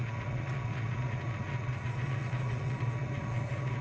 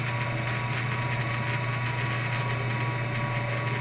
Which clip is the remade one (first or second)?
first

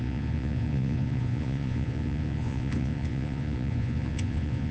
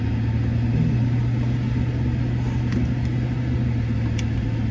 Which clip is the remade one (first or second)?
first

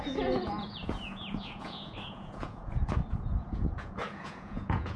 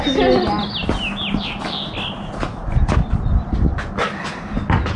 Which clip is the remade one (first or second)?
first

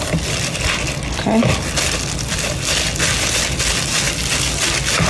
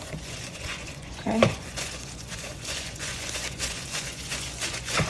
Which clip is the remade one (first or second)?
second